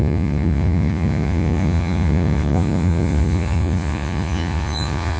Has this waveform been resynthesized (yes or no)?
yes